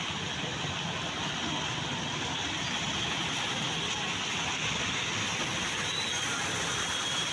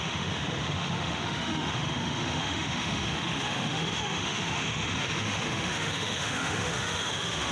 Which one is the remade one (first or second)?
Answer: second